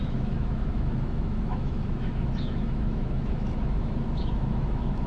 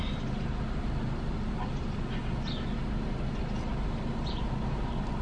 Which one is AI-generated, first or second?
first